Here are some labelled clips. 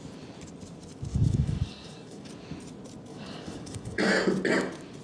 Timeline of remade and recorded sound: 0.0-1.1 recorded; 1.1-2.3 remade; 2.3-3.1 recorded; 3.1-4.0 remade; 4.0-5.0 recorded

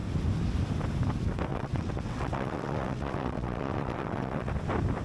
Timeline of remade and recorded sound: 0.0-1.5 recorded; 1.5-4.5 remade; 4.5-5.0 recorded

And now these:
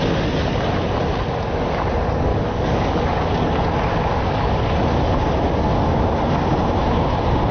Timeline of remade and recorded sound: 0.0-2.3 recorded; 2.3-3.3 remade; 3.3-3.9 recorded; 3.9-4.7 remade; 4.7-7.5 recorded

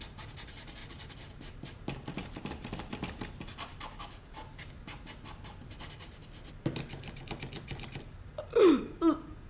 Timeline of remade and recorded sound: 0.0-0.8 recorded; 0.8-4.0 remade; 4.0-9.5 recorded